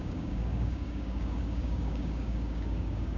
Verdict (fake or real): fake